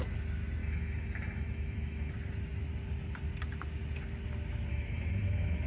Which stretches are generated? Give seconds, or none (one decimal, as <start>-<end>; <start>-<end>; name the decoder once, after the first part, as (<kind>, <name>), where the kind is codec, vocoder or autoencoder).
0.6-2.1 (autoencoder, DAC-VAE); 4.7-5.7